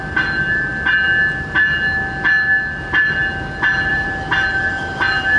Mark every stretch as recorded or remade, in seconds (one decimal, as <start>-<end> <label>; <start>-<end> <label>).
0.0-0.7 remade; 0.7-3.9 recorded; 3.9-5.4 remade